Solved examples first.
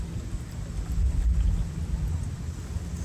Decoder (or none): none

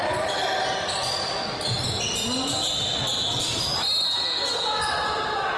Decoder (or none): none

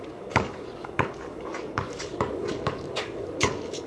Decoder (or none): codec, DAC